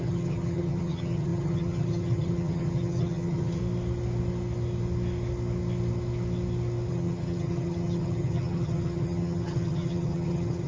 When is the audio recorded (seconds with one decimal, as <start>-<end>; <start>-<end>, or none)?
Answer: 3.6-6.9